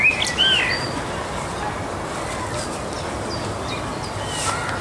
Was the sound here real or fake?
real